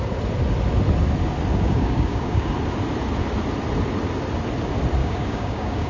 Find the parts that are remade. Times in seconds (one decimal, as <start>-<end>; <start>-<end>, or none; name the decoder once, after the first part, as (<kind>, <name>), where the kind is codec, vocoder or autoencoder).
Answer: 1.5-2.5 (codec, DAC); 5.0-5.9